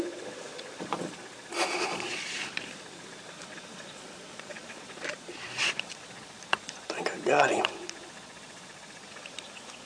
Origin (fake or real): fake